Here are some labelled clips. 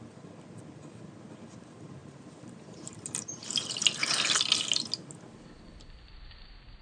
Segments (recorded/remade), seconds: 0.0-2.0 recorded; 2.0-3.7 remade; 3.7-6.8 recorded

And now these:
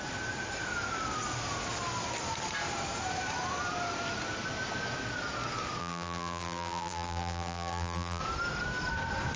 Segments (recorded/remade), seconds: 0.0-5.8 recorded; 5.8-8.2 remade; 8.2-9.4 recorded

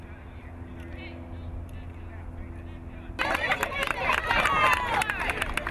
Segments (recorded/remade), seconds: 0.0-5.7 recorded

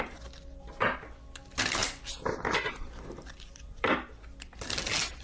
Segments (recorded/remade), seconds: 0.0-1.8 recorded; 1.8-4.1 remade; 4.1-5.2 recorded

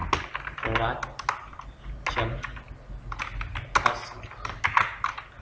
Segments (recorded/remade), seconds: 0.0-5.4 recorded